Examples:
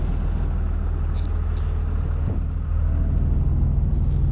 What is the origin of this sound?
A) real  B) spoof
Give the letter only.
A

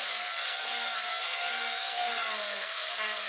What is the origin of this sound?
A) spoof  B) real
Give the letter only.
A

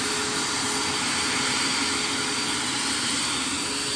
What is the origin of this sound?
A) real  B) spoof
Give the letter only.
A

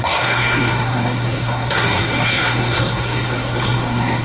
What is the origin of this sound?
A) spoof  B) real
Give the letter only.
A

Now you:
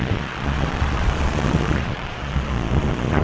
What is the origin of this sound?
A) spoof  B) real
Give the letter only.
A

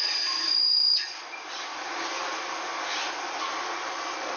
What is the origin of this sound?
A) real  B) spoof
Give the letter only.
A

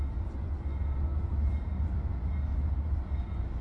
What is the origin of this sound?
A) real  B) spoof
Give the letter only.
A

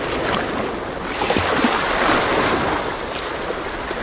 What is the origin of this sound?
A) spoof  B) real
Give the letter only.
B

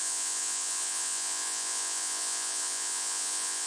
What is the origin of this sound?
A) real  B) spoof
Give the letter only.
B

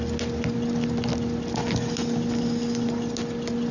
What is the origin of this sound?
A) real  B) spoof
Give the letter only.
A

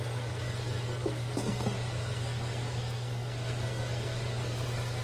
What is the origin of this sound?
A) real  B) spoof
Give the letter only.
B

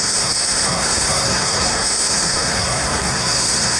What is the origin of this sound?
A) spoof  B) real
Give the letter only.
A